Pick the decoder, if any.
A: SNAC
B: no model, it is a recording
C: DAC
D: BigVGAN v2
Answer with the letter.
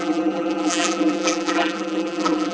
D